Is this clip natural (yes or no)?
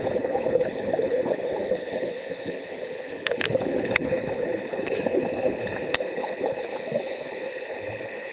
no